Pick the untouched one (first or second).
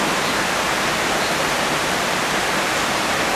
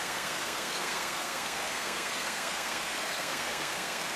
first